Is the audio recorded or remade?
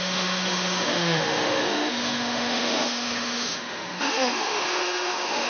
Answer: remade